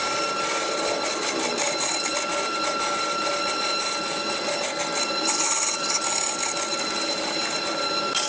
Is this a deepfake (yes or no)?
no